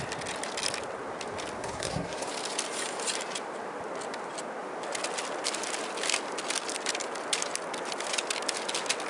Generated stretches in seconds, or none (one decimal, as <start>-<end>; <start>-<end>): 1.6-2.3